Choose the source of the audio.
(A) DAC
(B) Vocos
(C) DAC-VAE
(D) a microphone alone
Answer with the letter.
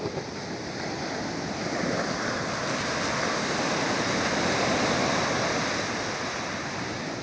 D